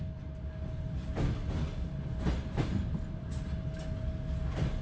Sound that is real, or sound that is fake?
real